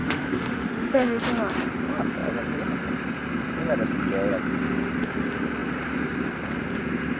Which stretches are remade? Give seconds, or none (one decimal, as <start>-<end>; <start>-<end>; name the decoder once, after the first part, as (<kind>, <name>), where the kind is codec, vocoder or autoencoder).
0.0-1.2 (autoencoder, DAC-VAE)